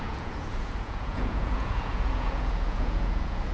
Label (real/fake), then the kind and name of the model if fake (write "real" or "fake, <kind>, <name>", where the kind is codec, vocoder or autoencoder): fake, vocoder, Vocos